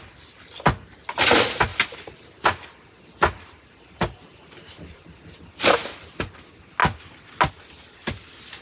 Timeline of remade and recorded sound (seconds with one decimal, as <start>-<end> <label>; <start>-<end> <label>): 0.0-8.6 recorded